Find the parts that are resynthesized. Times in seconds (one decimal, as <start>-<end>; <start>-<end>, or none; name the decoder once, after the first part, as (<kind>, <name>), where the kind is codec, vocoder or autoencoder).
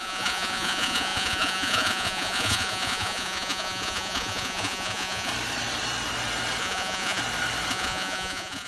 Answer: 0.0-5.3 (vocoder, Vocos); 6.6-7.2; 7.7-8.7